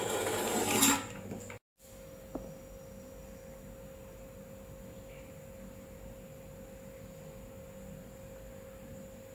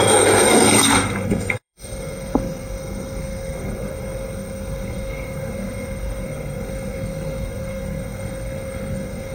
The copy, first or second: second